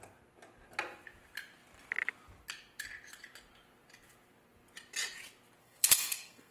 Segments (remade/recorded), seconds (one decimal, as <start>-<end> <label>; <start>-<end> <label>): 0.0-5.6 recorded; 5.6-6.5 remade